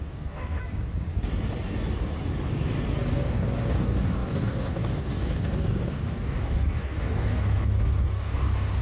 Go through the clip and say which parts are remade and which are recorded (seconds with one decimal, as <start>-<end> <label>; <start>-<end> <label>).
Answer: 0.0-0.6 remade; 0.6-3.1 recorded; 3.1-8.8 remade